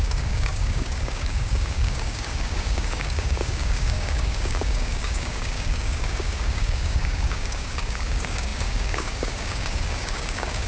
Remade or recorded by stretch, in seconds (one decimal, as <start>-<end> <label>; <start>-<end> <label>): 0.0-10.7 remade